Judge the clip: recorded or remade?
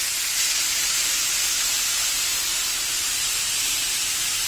recorded